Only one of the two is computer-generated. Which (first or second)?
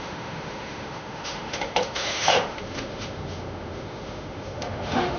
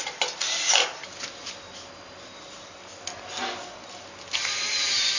first